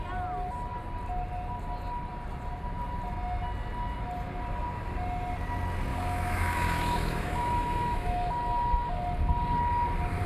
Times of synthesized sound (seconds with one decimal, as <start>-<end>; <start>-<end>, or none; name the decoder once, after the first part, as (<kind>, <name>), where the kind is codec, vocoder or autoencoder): 5.9-8.3 (autoencoder, DAC-VAE)